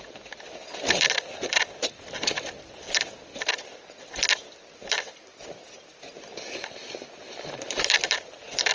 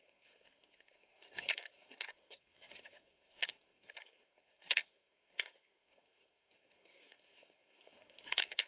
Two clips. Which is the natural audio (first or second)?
first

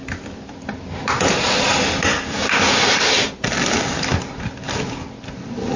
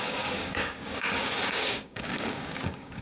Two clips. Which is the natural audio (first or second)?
first